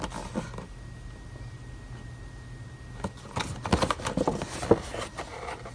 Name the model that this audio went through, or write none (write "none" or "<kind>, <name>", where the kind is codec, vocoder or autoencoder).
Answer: none